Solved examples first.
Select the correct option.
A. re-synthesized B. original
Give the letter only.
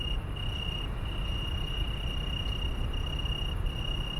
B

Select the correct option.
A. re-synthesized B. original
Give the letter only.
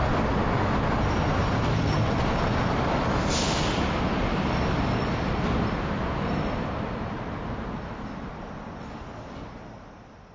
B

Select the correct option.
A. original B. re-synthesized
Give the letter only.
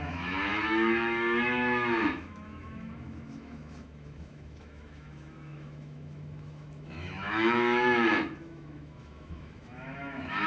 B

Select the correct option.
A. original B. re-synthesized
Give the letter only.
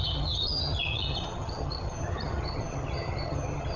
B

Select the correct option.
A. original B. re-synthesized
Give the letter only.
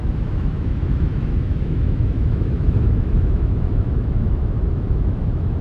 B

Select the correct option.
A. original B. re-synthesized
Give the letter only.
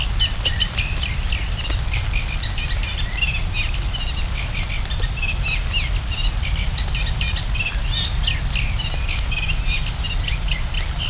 A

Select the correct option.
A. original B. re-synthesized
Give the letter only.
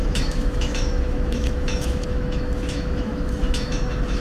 B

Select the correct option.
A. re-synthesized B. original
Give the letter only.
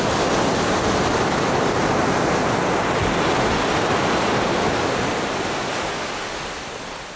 B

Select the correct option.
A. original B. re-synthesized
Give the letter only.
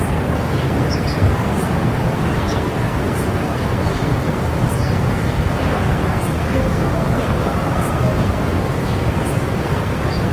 B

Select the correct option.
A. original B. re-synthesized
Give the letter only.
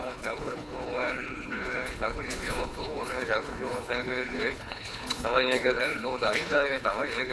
B